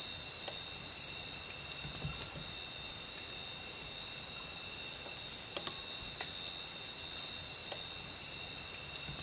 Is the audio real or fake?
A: real